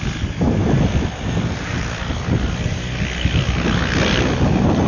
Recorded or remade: recorded